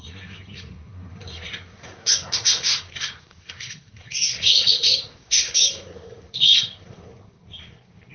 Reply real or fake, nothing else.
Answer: fake